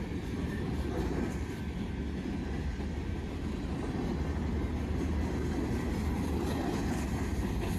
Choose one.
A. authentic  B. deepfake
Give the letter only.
A